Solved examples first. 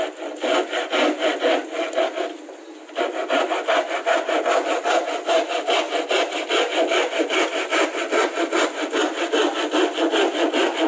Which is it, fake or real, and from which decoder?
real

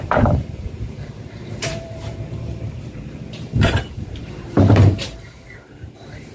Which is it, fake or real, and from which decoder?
fake, vocoder, BigVGAN v2